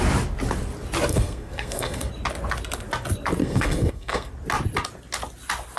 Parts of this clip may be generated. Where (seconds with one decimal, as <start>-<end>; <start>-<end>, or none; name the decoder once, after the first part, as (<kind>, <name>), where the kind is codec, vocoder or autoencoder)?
1.1-2.1 (codec, SNAC); 3.4-4.3

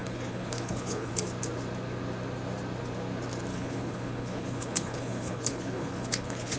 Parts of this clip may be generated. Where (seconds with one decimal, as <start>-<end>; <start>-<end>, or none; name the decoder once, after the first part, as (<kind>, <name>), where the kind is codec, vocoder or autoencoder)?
0.0-1.1 (codec, HILCodec); 3.5-6.6

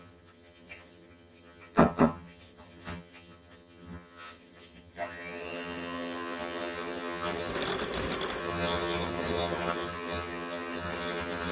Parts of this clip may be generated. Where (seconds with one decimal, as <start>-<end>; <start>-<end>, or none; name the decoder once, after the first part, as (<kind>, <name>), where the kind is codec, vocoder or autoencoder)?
0.0-7.5 (vocoder, HiFi-GAN); 8.4-11.5

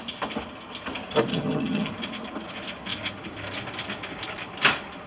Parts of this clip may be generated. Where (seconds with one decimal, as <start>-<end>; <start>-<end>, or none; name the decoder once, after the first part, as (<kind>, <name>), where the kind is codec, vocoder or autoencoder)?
1.3-1.9 (vocoder, HiFi-GAN)

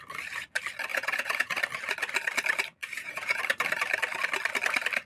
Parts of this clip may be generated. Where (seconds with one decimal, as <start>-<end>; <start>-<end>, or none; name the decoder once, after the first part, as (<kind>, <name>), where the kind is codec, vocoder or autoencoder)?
0.9-1.6 (vocoder, Vocos); 2.8-3.4